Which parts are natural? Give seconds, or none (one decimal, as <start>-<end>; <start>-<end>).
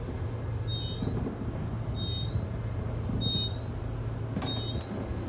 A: 0.0-5.3